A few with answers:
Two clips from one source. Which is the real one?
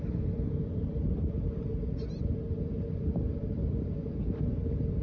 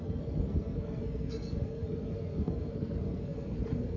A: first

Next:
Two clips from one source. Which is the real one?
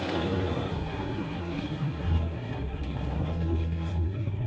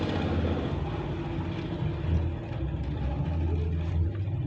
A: second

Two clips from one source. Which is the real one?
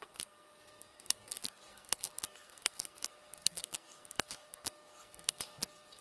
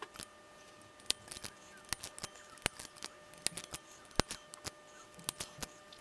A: second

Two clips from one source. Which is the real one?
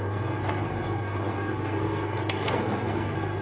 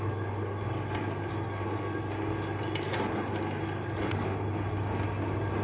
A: second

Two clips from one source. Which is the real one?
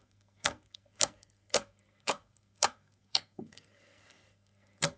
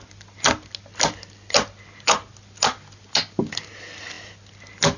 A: second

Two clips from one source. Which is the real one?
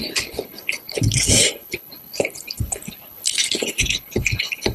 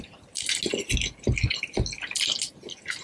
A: second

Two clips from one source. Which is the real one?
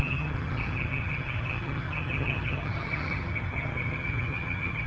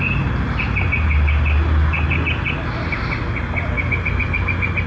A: second